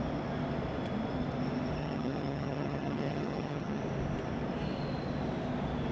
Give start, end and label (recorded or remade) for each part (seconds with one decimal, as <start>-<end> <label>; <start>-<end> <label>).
0.0-1.8 recorded; 1.8-3.8 remade; 3.8-5.9 recorded